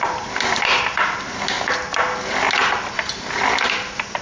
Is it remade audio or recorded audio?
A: recorded